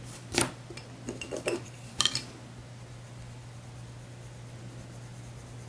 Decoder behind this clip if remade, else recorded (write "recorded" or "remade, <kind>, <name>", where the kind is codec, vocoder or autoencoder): recorded